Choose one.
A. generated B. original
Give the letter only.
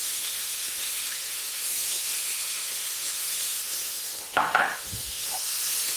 A